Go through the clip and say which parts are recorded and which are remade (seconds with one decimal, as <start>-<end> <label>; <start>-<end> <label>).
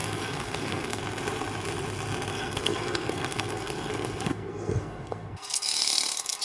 0.0-1.0 remade; 1.0-2.3 recorded; 2.3-6.4 remade